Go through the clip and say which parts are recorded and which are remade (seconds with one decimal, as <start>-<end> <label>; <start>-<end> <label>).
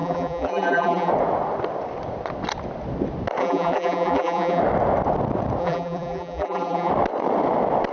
0.0-1.1 remade; 1.1-3.4 recorded; 3.4-4.6 remade; 4.6-5.6 recorded; 5.6-6.9 remade; 6.9-7.9 recorded